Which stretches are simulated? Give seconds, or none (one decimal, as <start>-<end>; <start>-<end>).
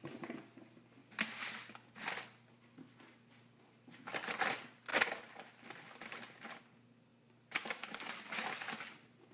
none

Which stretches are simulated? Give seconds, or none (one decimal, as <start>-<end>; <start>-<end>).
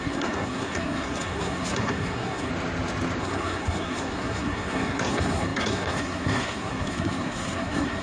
0.0-2.5; 3.2-8.0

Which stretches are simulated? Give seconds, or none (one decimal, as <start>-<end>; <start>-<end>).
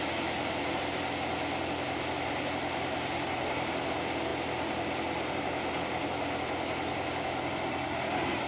none